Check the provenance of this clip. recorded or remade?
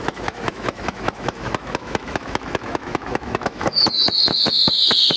remade